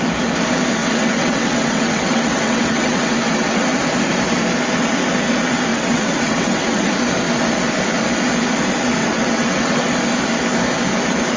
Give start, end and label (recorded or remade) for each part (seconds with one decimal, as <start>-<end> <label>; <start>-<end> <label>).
0.0-0.8 recorded; 0.8-3.6 remade; 3.6-5.7 recorded; 5.7-6.9 remade; 6.9-9.0 recorded; 9.0-9.8 remade; 9.8-11.4 recorded